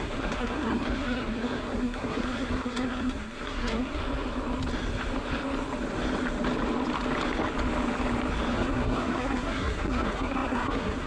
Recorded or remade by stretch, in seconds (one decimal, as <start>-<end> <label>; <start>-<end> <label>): 0.0-4.0 remade; 4.0-8.5 recorded; 8.5-11.1 remade

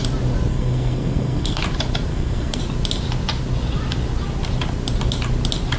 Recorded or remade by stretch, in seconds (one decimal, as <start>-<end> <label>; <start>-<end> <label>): 0.0-0.5 recorded; 0.5-1.6 remade; 1.6-2.1 recorded; 2.1-2.6 remade; 2.6-5.8 recorded